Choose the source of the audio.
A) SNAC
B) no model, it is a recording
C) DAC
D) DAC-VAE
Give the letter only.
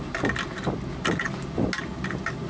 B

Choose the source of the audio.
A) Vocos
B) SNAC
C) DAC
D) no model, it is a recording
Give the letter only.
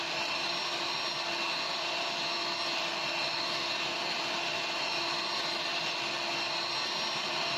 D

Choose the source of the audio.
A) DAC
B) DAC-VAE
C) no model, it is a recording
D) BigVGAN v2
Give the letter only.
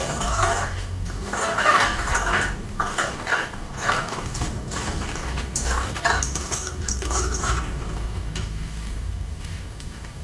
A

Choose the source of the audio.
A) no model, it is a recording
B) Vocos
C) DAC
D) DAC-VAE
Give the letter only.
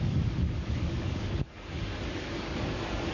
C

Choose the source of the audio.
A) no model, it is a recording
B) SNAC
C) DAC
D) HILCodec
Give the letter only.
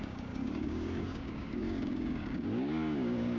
C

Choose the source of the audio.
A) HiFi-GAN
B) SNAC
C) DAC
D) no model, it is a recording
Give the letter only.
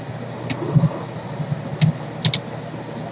D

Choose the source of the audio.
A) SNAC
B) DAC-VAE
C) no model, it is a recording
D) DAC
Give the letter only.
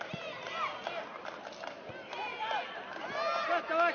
C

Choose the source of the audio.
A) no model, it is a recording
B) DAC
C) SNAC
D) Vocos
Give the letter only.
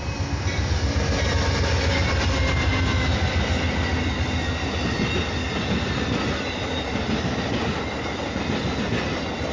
A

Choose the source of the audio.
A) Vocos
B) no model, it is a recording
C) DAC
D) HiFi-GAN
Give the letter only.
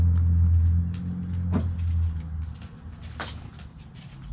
B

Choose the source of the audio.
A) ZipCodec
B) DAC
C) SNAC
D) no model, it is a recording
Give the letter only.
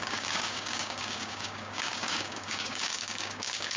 B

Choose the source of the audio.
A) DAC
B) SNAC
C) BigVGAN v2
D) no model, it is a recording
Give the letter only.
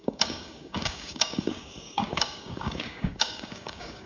A